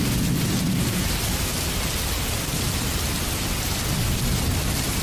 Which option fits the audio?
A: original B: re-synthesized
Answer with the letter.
A